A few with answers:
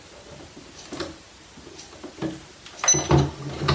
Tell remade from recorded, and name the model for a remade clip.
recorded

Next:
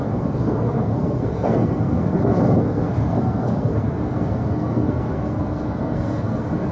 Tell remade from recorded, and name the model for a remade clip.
remade, codec, SNAC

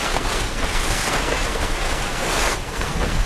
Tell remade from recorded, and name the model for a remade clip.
remade, codec, SNAC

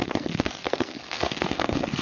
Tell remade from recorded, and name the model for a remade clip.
remade, codec, SNAC